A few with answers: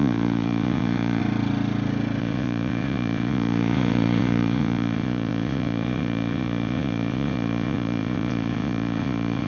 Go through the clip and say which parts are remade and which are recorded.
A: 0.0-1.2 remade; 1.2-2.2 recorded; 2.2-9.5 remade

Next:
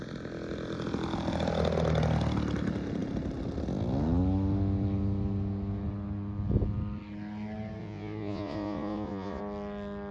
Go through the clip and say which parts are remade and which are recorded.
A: 0.0-7.8 recorded; 7.8-9.4 remade; 9.4-10.1 recorded

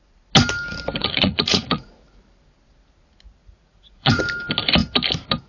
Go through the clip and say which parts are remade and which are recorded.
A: 0.0-1.0 recorded; 1.0-1.9 remade; 1.9-3.4 recorded; 3.4-4.2 remade; 4.2-5.5 recorded

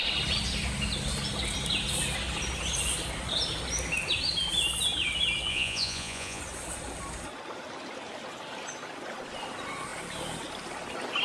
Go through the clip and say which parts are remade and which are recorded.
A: 0.0-5.5 recorded; 5.5-6.4 remade; 6.4-11.2 recorded

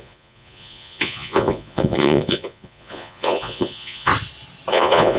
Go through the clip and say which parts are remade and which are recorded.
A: 0.0-4.1 remade; 4.1-4.7 recorded; 4.7-5.2 remade

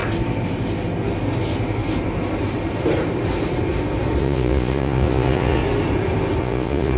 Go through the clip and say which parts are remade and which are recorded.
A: 0.0-4.2 recorded; 4.2-5.6 remade; 5.6-6.4 recorded; 6.4-7.0 remade

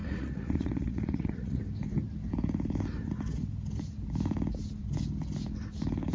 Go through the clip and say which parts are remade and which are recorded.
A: 0.0-1.6 remade; 1.6-6.1 recorded